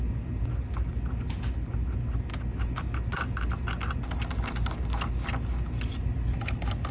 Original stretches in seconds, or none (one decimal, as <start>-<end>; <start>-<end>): 0.0-6.9